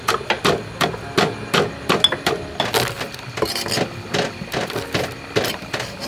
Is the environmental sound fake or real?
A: real